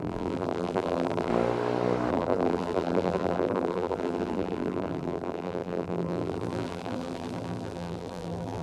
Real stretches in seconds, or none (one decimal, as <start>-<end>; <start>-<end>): 1.3-2.1